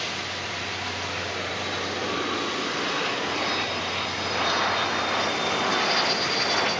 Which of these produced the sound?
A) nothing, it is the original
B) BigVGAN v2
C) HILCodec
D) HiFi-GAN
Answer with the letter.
A